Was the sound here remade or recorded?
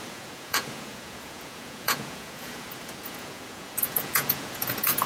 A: remade